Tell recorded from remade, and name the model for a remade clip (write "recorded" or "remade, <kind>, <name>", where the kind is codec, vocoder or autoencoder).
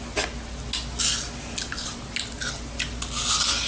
recorded